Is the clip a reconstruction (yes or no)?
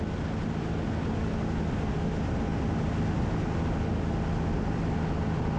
no